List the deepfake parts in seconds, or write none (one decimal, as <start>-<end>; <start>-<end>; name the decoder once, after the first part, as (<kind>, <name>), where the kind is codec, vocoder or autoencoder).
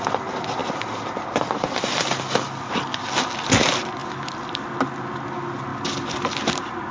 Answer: none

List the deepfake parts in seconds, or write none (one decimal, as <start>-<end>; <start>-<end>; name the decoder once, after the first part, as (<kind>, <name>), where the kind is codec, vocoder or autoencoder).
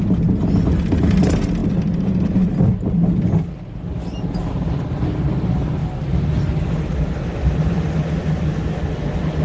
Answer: none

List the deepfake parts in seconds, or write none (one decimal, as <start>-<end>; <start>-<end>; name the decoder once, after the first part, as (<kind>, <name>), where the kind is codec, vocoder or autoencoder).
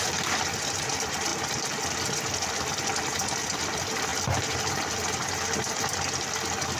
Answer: none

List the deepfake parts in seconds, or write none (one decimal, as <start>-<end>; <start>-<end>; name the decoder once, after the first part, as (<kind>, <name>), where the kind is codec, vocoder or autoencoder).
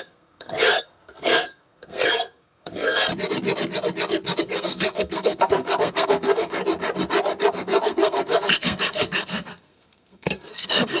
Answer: 0.0-3.1 (codec, SNAC); 4.4-6.6; 7.5-11.0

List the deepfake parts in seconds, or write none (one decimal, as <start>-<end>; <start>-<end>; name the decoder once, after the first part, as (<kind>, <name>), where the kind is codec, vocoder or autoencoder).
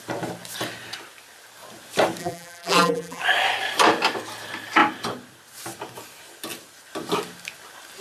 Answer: 2.2-3.2 (vocoder, BigVGAN v2)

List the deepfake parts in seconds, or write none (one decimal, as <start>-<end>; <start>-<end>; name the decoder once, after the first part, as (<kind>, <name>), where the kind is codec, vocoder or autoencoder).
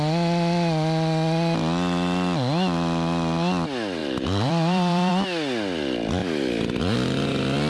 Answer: 4.0-5.1 (vocoder, BigVGAN v2)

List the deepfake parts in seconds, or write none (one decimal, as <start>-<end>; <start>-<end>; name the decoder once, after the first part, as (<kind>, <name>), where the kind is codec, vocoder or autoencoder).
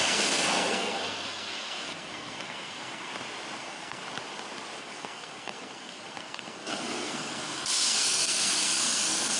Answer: 0.0-3.1 (codec, SNAC); 3.6-4.0; 4.8-9.4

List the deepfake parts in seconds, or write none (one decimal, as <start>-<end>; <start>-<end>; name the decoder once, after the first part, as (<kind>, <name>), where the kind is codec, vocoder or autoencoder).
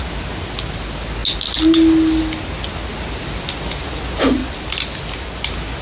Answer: none